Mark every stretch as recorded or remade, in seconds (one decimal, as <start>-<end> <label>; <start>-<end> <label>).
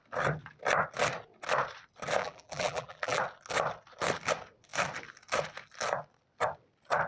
0.0-2.2 recorded; 2.2-3.2 remade; 3.2-7.1 recorded